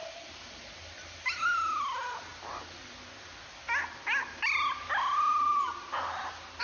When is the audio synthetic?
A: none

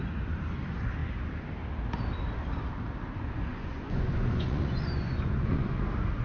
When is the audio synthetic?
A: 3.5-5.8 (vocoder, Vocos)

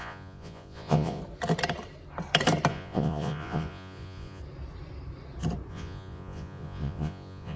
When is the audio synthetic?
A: 0.0-1.2 (vocoder, Vocos); 2.7-4.4; 5.7-7.6

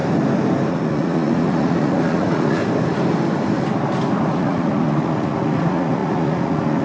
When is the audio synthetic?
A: 0.7-2.6 (vocoder, Vocos); 4.3-6.8

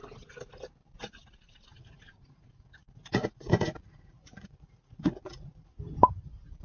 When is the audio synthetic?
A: 1.7-5.7 (vocoder, Vocos)

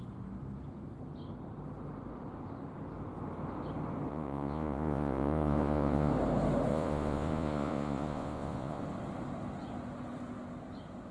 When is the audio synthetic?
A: 4.1-6.1 (vocoder, Vocos); 6.7-8.8